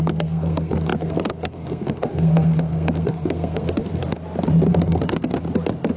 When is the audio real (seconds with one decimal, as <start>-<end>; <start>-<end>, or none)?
4.0-4.7; 5.3-6.0

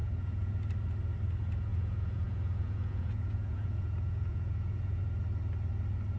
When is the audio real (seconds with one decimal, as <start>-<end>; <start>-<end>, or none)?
0.5-1.7; 5.0-6.2

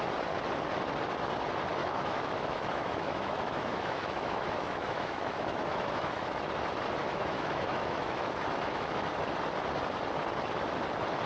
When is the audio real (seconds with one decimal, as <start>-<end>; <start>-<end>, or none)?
0.0-1.8; 6.5-7.0; 9.1-11.3

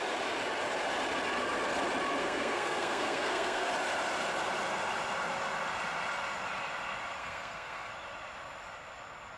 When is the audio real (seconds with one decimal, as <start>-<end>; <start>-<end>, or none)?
0.0-2.2; 3.7-7.2; 7.9-9.4

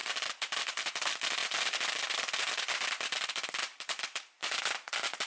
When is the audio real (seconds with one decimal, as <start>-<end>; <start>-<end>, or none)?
0.9-1.4; 4.6-5.3

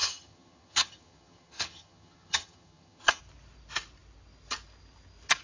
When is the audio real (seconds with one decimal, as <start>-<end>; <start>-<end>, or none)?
3.2-5.4

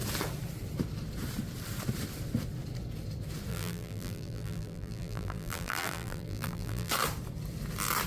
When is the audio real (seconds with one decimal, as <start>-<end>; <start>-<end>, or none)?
0.0-3.5; 6.9-8.1

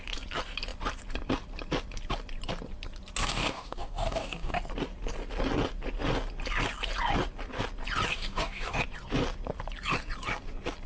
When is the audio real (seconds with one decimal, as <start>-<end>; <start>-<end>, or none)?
0.0-3.2; 4.6-8.1; 8.8-10.9